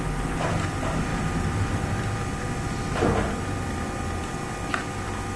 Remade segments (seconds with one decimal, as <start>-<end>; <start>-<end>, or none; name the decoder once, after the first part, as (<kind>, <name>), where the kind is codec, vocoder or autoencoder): none